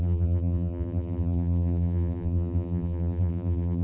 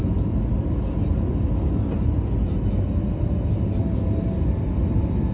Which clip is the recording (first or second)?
second